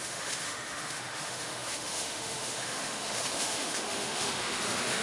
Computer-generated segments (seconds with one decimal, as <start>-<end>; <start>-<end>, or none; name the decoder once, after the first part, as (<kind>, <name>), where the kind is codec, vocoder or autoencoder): 0.0-5.0 (autoencoder, DAC-VAE)